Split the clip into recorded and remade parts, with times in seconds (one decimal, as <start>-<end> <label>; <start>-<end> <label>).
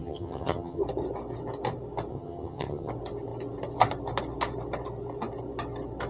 0.0-0.8 remade; 0.8-2.1 recorded; 2.1-2.9 remade; 2.9-6.1 recorded